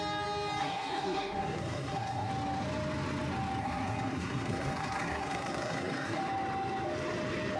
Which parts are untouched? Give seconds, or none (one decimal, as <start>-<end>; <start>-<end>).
0.0-0.6; 2.3-3.6; 6.2-7.6